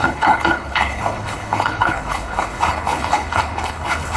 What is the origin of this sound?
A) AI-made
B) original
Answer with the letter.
A